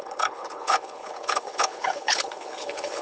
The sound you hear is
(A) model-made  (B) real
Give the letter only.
A